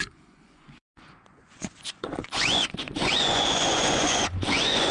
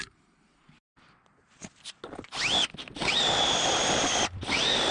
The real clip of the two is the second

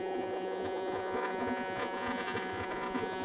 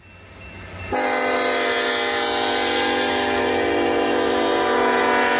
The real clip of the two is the second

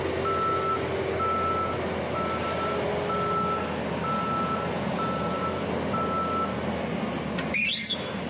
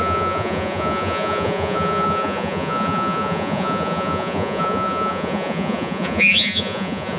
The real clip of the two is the first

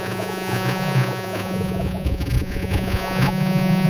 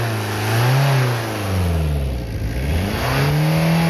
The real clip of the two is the second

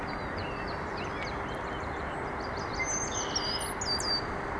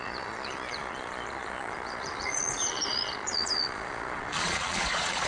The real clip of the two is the first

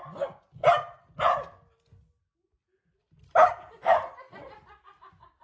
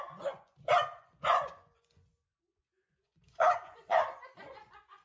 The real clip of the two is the first